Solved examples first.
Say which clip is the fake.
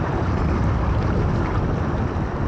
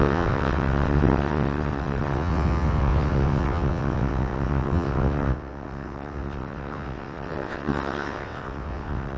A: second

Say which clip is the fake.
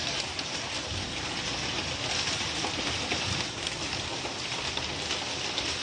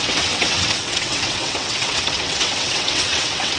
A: second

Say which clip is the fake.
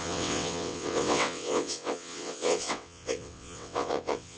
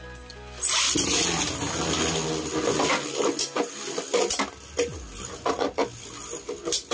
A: first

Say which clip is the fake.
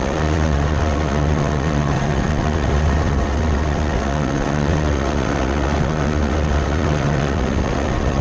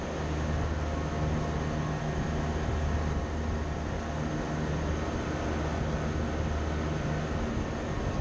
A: first